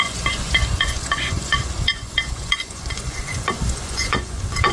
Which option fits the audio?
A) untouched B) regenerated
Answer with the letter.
B